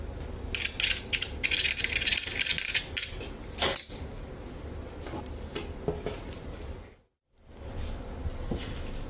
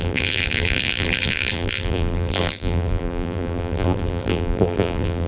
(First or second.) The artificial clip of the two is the second